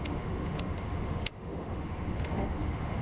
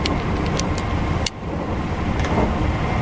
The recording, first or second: second